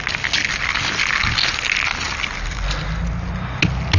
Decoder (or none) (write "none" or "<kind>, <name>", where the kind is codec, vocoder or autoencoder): none